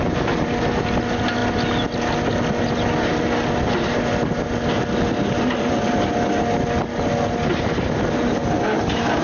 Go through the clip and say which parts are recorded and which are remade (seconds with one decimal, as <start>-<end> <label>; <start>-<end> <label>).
0.0-9.2 recorded